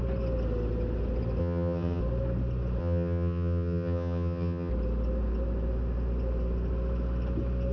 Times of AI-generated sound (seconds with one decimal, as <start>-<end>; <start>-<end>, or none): 1.4-2.0; 2.8-4.7

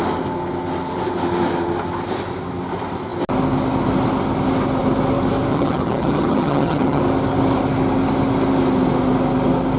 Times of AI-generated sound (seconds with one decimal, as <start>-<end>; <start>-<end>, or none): 5.5-7.0

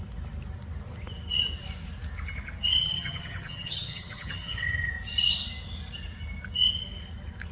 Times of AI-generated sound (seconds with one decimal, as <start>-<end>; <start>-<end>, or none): 2.8-4.9

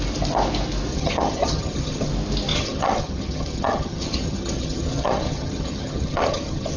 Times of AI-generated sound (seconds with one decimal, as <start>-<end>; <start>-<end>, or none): 0.9-2.1; 2.5-6.8

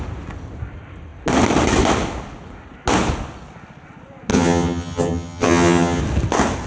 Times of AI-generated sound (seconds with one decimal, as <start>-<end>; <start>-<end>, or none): 4.3-6.0

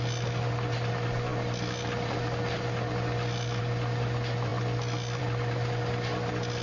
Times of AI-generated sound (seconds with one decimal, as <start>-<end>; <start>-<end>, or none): none